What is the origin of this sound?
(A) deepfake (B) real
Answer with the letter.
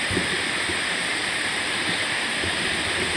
B